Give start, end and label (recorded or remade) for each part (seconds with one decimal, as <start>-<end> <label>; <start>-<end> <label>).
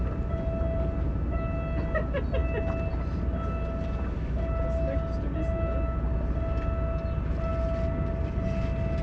0.0-9.0 recorded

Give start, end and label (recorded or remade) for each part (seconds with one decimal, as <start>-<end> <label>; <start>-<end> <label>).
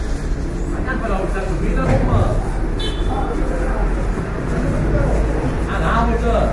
0.0-6.5 recorded